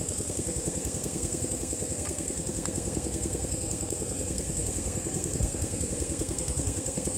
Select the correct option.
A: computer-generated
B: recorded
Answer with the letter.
A